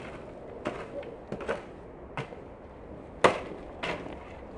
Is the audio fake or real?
real